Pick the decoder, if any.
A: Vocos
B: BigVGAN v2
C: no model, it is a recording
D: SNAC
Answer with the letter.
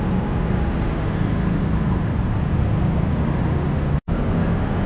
C